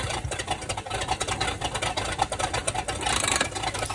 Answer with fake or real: real